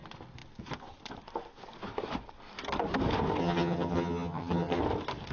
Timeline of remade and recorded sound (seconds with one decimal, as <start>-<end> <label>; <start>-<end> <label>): 0.0-3.4 recorded; 3.4-4.8 remade; 4.8-5.3 recorded